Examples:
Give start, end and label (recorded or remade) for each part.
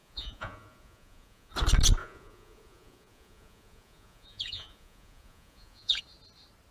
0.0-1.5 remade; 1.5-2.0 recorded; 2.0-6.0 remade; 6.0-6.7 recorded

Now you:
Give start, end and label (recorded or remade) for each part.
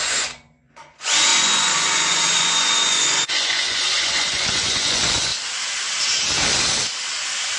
0.0-5.3 remade; 5.3-7.6 recorded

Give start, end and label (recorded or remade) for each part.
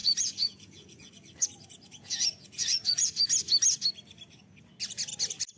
0.0-1.1 remade; 1.1-1.9 recorded; 1.9-3.2 remade; 3.2-5.6 recorded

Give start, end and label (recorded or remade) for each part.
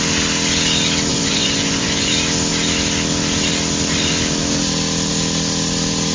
0.0-1.1 recorded; 1.1-2.1 remade; 2.1-6.1 recorded